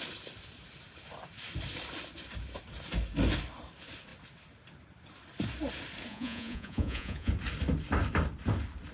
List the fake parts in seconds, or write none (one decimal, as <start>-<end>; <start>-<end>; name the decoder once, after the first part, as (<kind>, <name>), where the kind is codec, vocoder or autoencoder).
6.1-7.3 (vocoder, Vocos)

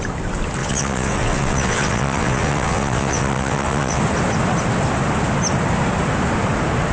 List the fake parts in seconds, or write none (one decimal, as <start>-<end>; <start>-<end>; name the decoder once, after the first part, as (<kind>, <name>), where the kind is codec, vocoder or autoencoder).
0.6-4.0 (vocoder, WaveNeXt)

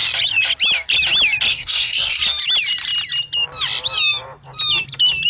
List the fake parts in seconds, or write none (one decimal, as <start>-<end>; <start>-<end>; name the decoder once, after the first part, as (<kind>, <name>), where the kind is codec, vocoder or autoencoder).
1.5-2.2 (codec, SNAC)